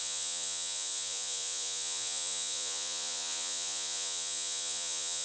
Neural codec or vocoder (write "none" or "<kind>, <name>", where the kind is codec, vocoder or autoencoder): vocoder, Vocos